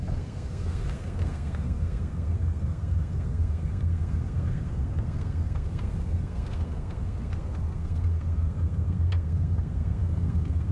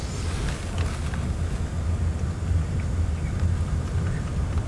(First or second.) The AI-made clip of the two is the first